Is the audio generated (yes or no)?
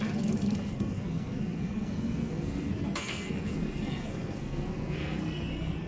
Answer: yes